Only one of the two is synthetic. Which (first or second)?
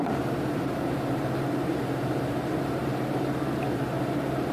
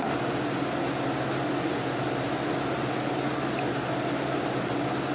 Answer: first